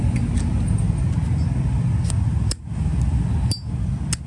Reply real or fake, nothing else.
real